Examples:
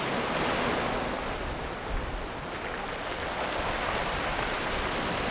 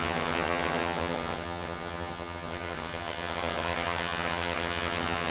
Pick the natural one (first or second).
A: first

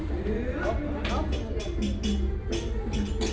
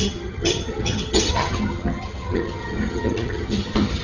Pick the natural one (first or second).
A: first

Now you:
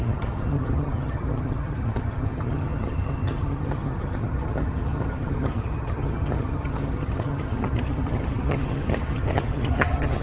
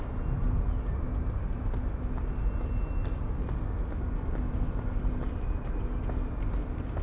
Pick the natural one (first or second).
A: second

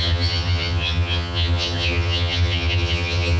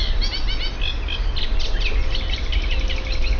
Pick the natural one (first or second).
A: second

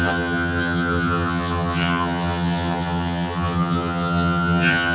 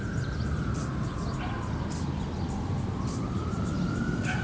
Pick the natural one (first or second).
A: second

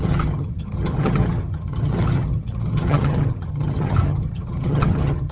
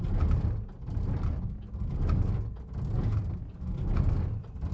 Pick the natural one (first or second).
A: second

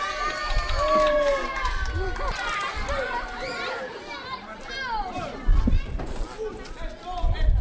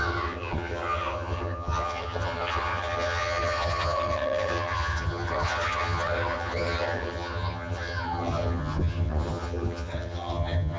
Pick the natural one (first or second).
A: first